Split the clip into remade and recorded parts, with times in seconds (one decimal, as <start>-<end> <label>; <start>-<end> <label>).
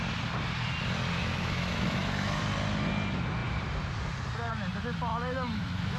0.0-1.2 recorded; 1.2-2.4 remade; 2.4-5.1 recorded; 5.1-6.0 remade